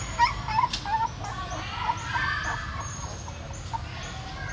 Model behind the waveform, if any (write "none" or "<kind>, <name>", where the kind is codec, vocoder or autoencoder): none